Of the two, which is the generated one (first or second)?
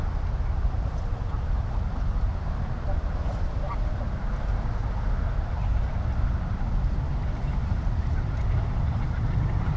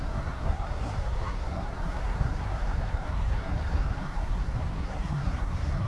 second